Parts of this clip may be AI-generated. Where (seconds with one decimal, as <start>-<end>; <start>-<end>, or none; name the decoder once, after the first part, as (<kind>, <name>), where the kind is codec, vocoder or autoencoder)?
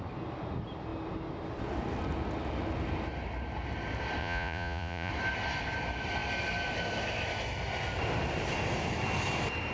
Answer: 4.2-5.1 (vocoder, Vocos)